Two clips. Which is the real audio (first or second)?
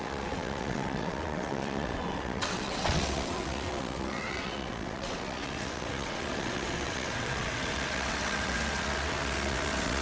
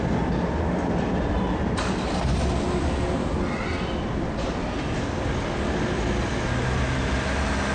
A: second